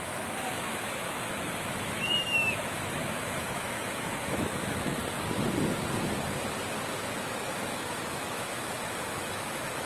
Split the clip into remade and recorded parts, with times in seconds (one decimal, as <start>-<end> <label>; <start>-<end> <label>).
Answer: 0.0-5.0 remade; 5.0-7.2 recorded; 7.2-9.9 remade